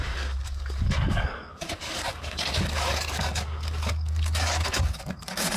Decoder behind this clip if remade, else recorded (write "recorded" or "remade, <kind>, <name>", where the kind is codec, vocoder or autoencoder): remade, codec, DAC